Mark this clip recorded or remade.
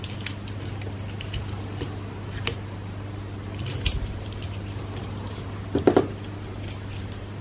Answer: remade